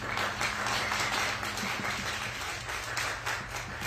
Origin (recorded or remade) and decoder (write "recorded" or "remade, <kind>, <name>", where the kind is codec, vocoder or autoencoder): recorded